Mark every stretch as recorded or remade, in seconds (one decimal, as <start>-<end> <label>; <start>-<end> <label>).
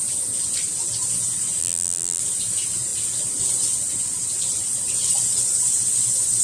0.0-1.6 recorded; 1.6-2.2 remade; 2.2-6.4 recorded